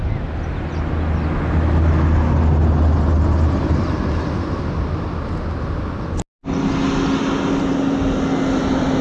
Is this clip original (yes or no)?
yes